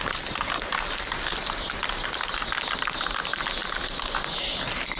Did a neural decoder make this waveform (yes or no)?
no